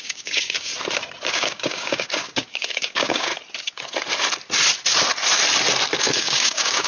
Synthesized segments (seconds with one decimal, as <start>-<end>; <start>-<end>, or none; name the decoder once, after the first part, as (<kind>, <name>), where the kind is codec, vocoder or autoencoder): 0.0-0.7 (codec, DAC); 1.3-3.3; 6.0-6.9